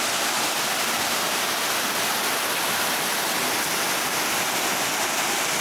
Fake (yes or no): no